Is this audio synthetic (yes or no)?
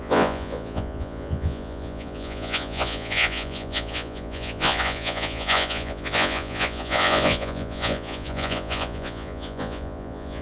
yes